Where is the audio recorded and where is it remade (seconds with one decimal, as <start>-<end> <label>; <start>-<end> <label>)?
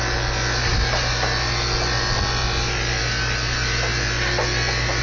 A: 0.0-5.0 recorded